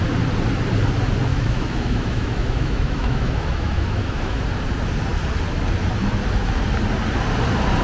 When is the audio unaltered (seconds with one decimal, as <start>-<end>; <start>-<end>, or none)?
0.0-1.3; 4.4-7.8